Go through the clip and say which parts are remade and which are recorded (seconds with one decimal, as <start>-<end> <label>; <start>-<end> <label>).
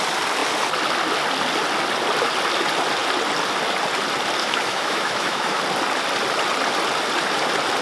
0.0-4.4 recorded; 4.4-5.6 remade; 5.6-7.8 recorded